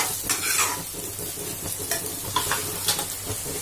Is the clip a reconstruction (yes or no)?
no